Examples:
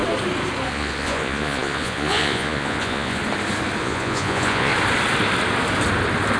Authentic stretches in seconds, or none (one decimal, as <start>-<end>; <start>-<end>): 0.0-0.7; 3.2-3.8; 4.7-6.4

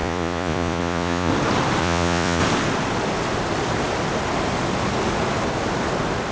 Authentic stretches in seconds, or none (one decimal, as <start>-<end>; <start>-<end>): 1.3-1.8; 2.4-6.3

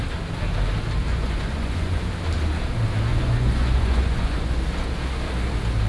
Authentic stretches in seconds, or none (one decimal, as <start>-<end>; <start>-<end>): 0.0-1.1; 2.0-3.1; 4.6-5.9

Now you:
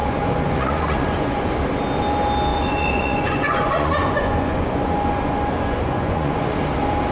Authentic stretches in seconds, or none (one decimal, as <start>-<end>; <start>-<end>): 1.5-2.5; 6.6-7.1

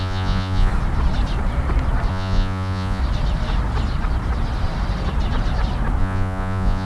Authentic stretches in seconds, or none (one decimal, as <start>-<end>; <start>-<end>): 0.7-2.1; 3.0-6.0

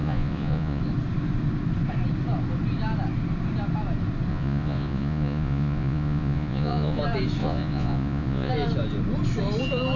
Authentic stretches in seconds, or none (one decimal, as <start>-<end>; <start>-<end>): 0.8-4.3; 7.0-7.4; 8.5-10.0

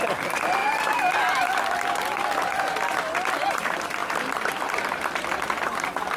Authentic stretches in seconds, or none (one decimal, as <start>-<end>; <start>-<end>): 0.0-6.2